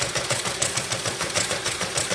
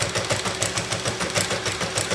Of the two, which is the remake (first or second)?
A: first